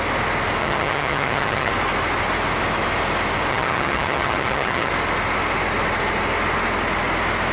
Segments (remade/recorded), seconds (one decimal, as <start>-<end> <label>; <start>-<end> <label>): 0.0-0.6 recorded; 0.6-1.7 remade; 1.7-3.5 recorded; 3.5-4.9 remade; 4.9-7.5 recorded